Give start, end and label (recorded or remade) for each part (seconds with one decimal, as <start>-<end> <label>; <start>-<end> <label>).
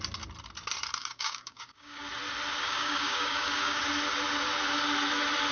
0.0-1.0 recorded; 1.0-2.0 remade; 2.0-2.6 recorded; 2.6-3.8 remade; 3.8-5.5 recorded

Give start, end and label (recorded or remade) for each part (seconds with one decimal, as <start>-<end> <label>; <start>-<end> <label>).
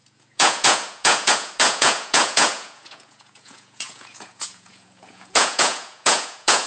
0.0-6.7 remade